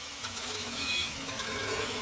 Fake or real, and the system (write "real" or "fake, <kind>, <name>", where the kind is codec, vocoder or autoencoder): fake, autoencoder, DAC-VAE